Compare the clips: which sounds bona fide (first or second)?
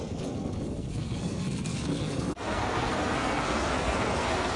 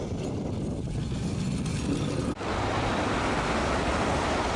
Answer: second